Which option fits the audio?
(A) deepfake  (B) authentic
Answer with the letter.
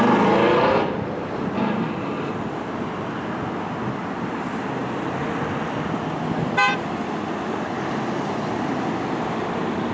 B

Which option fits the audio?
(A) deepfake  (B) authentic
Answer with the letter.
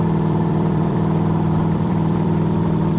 A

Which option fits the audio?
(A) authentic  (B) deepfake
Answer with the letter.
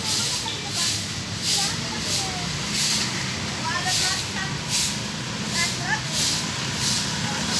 A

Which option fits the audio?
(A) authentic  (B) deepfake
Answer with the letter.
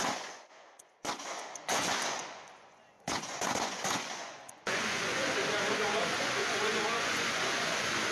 B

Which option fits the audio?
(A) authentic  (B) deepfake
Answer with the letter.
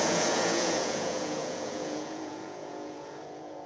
B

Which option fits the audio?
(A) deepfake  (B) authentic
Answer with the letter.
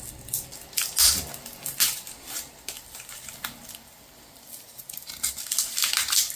B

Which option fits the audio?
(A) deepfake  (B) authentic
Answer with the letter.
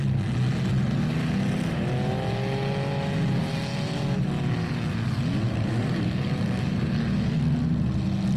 B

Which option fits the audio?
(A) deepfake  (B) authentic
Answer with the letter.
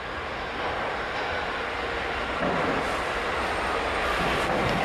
B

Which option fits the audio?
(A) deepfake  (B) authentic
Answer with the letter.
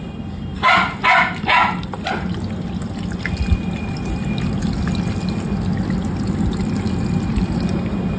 B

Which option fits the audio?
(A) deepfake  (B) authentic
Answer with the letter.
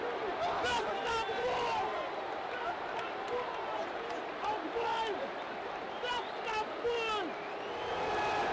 B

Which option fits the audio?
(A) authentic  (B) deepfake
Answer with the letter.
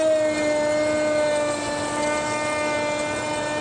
A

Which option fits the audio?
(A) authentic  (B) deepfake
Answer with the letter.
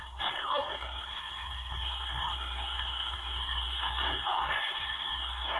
B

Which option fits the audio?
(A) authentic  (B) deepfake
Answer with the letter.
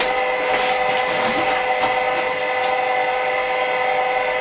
A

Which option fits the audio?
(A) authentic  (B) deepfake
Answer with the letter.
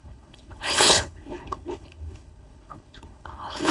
B